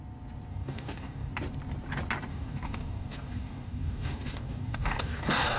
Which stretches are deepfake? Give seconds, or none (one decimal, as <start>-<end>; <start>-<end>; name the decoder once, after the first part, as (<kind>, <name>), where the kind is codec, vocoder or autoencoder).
0.5-1.3 (codec, DAC); 2.3-5.6